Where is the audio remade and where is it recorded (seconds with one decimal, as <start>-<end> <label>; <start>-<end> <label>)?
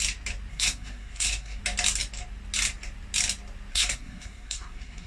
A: 0.0-0.5 recorded; 0.5-1.6 remade; 1.6-3.7 recorded; 3.7-5.1 remade